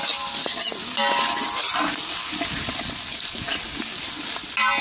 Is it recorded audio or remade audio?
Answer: recorded